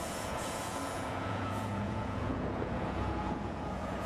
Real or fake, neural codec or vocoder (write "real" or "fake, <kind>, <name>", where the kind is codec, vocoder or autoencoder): fake, vocoder, Vocos